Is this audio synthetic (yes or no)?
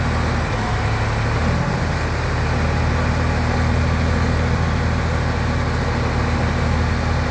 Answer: no